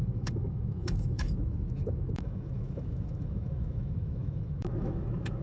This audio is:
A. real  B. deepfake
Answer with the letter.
B